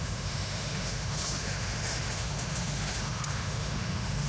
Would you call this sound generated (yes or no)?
yes